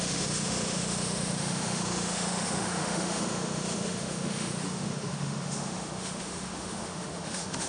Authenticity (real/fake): fake